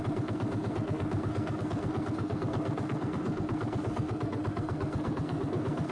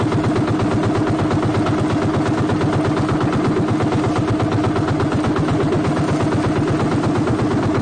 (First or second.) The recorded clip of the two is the second